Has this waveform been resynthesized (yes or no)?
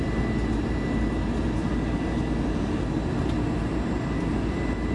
no